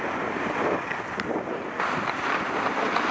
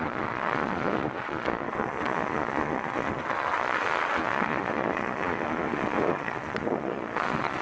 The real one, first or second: first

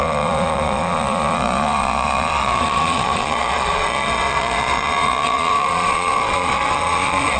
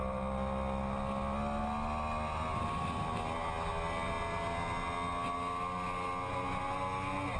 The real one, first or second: second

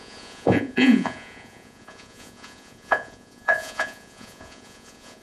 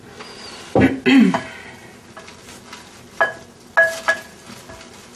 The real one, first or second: second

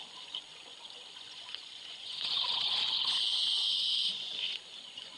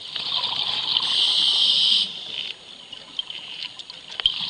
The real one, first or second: second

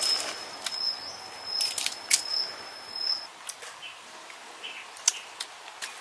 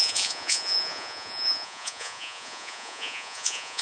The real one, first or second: first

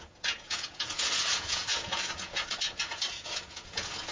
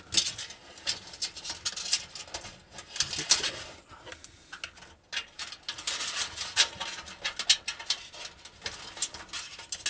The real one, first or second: second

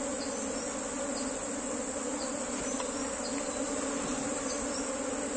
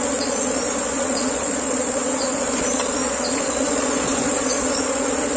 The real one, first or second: first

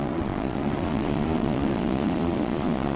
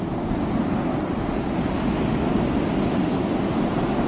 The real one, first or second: second